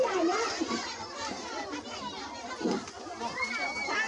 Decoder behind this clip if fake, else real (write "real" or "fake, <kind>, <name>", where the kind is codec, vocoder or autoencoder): fake, vocoder, BigVGAN v2